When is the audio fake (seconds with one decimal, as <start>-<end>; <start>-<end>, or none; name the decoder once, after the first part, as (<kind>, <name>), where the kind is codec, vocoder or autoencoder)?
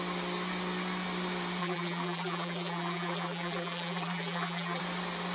1.6-4.8 (vocoder, BigVGAN v2)